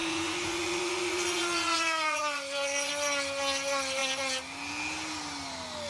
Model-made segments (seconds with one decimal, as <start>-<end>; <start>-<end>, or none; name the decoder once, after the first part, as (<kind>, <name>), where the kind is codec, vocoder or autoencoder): 0.0-2.9 (vocoder, Vocos)